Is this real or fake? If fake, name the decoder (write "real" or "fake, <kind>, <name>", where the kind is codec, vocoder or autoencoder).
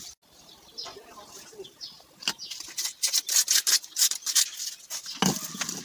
real